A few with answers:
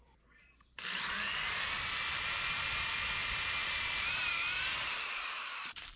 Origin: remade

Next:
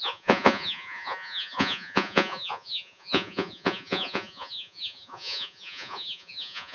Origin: remade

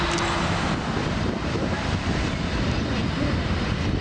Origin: recorded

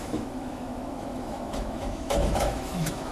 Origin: remade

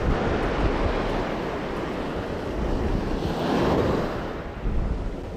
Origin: recorded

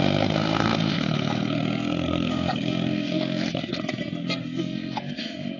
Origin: remade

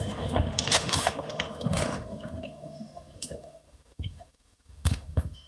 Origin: remade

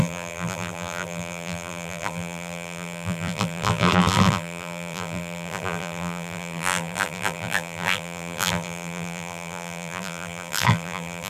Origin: remade